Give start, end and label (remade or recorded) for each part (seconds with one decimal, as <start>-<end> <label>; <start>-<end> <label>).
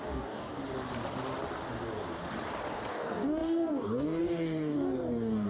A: 0.0-0.6 remade; 0.6-2.9 recorded; 2.9-5.5 remade